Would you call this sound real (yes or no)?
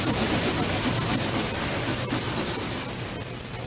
yes